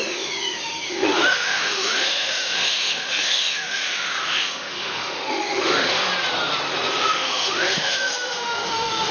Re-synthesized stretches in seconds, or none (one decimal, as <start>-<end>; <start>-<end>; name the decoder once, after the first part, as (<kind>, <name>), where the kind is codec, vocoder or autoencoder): 0.0-6.0 (autoencoder, DAC-VAE); 7.0-9.1